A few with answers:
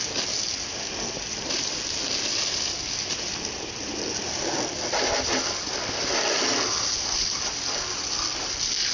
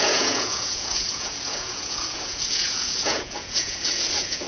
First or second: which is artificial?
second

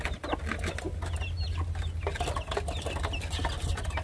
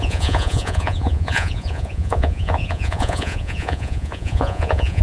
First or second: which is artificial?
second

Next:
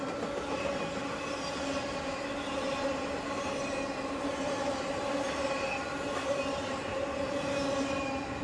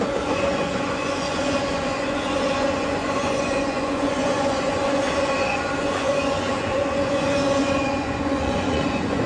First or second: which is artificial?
second